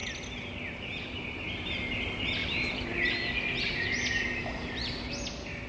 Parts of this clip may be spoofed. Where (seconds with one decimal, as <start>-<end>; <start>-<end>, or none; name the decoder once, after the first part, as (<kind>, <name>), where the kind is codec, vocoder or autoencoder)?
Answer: 2.4-3.1 (vocoder, BigVGAN v2); 4.4-5.7